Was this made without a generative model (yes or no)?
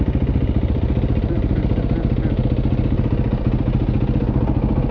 yes